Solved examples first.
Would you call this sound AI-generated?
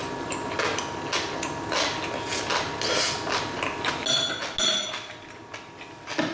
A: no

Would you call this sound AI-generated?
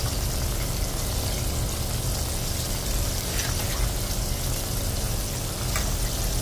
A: no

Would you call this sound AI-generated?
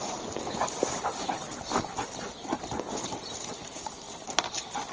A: no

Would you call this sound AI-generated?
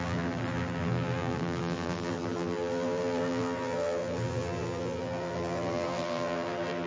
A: yes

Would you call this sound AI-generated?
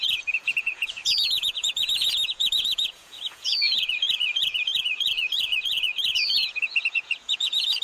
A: yes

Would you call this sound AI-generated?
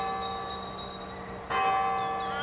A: no